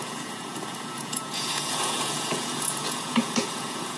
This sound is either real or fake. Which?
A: fake